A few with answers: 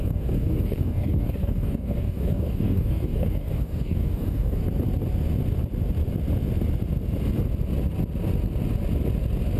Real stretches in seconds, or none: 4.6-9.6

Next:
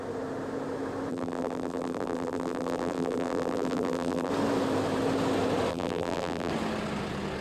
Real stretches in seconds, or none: 0.0-1.1; 4.3-5.7; 6.5-7.4

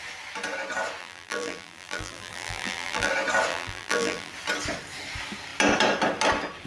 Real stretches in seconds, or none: 0.0-1.0; 3.1-3.5; 4.3-6.7

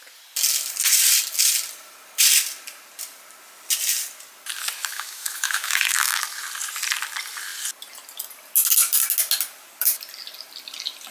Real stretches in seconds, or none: 0.0-4.8; 6.2-11.1

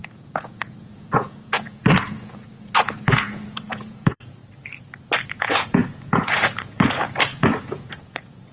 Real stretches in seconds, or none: 4.4-5.3

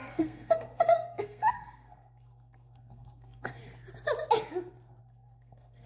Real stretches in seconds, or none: 3.6-5.0

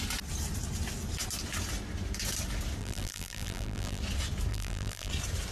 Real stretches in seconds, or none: 0.0-2.8; 4.0-4.5; 5.1-5.5

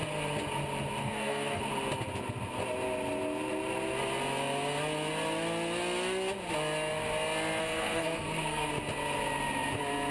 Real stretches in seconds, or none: 0.0-1.0; 1.6-7.6; 8.7-10.1